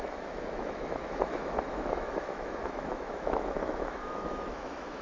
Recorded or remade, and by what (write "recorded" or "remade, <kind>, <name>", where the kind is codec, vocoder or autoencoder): remade, autoencoder, DAC-VAE